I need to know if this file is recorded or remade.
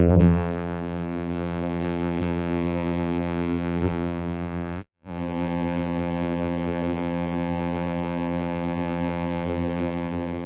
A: remade